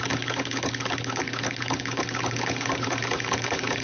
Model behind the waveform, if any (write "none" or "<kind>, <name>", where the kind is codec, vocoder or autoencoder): codec, HILCodec